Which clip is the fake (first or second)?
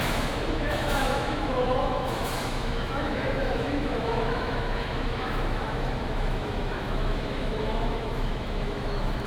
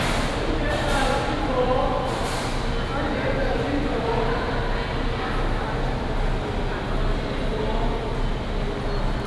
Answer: first